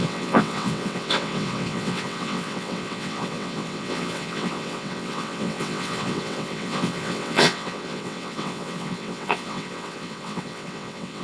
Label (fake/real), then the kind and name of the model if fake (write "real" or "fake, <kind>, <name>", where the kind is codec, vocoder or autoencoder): fake, vocoder, WaveNeXt